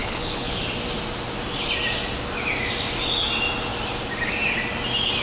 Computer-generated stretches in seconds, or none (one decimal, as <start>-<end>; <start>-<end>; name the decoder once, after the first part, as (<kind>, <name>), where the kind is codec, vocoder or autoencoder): 0.0-0.6 (codec, HILCodec)